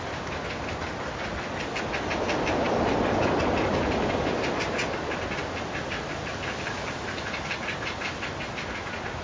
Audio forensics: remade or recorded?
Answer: recorded